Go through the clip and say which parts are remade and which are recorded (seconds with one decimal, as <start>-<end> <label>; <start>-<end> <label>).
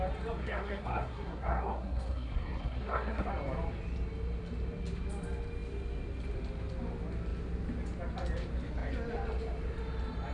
0.0-0.4 recorded; 0.4-3.3 remade; 3.3-10.3 recorded